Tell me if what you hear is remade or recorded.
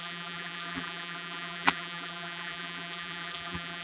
remade